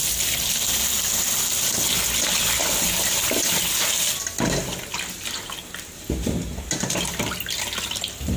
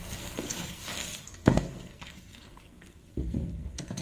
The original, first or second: first